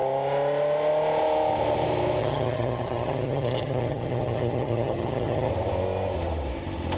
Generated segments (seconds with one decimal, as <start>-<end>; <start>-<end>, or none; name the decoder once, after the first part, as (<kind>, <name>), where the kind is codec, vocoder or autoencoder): 2.2-5.5 (vocoder, HiFi-GAN)

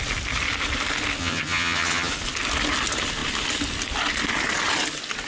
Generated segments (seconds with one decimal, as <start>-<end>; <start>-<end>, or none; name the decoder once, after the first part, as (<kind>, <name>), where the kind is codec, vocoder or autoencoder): 1.2-2.1 (vocoder, HiFi-GAN)

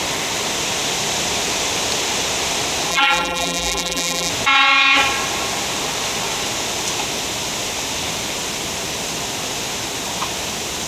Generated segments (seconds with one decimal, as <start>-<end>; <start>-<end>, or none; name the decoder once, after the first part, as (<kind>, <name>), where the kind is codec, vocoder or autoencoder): 2.9-4.3 (vocoder, BigVGAN v2)

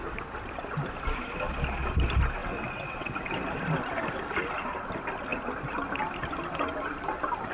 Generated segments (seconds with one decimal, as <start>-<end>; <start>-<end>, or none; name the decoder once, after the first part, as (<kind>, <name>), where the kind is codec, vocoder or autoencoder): 2.4-3.1 (vocoder, WaveNeXt)

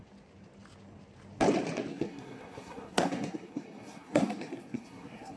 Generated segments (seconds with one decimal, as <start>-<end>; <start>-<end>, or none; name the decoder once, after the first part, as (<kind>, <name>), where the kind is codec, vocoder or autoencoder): 1.9-5.4 (codec, SNAC)

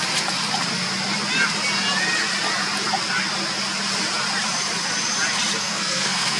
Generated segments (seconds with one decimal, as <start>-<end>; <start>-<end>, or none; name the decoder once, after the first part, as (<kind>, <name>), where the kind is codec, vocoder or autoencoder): 5.6-6.4 (codec, SNAC)

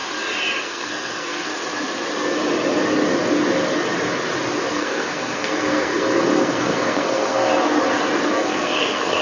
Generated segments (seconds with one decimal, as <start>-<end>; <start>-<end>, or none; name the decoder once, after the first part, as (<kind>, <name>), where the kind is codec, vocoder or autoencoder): 0.6-1.5 (codec, SNAC); 4.7-7.5; 8.3-9.2

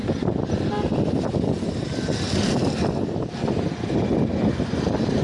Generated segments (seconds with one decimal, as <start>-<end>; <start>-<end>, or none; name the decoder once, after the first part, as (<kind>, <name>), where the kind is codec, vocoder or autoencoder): none